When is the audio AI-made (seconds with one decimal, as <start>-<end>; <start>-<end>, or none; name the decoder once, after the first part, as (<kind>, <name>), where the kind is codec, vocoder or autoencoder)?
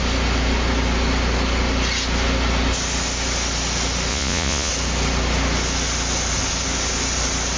4.1-4.7 (vocoder, Vocos)